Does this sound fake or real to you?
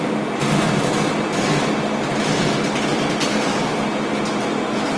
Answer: real